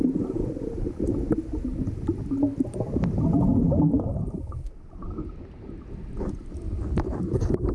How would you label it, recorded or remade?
recorded